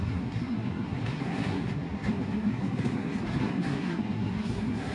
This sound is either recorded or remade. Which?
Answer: remade